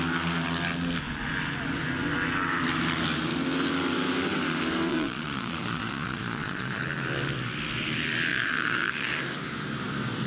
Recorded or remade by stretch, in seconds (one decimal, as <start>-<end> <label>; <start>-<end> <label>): 0.0-4.9 recorded; 4.9-6.8 remade; 6.8-8.3 recorded; 8.3-9.1 remade; 9.1-10.3 recorded